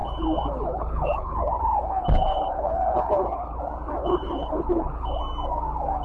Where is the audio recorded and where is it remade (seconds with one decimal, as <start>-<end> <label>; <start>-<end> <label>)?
0.0-3.6 remade; 3.6-4.0 recorded; 4.0-5.2 remade; 5.2-6.0 recorded